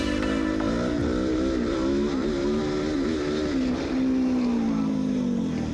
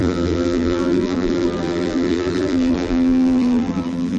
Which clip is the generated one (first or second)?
second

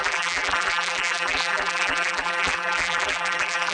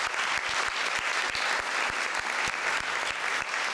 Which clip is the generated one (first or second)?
first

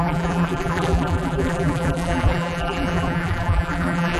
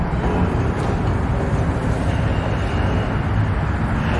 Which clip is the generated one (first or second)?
first